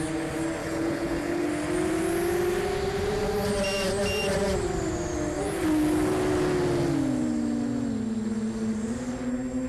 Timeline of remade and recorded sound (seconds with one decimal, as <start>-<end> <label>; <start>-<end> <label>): 0.0-0.6 recorded; 0.6-1.5 remade; 1.5-9.7 recorded